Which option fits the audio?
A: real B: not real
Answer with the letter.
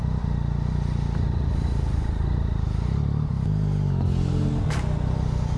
A